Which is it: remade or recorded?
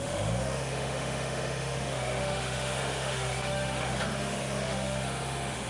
remade